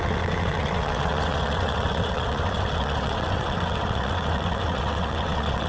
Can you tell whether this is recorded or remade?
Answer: remade